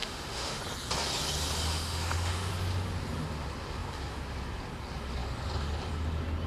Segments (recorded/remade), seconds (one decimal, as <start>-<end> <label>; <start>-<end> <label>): 0.0-0.6 remade; 0.6-1.7 recorded; 1.7-2.5 remade; 2.5-6.5 recorded